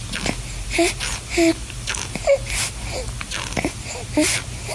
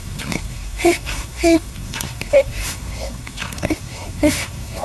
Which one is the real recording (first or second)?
first